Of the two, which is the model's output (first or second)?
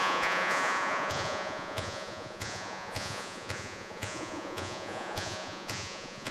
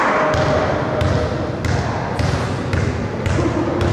first